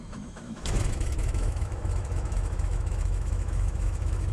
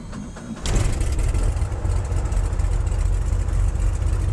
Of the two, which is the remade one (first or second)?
first